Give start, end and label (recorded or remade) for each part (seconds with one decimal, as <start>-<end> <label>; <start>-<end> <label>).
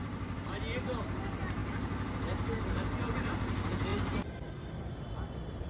0.0-5.7 recorded